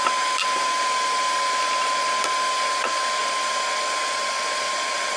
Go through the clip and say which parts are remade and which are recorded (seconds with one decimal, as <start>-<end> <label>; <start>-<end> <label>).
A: 0.0-5.2 recorded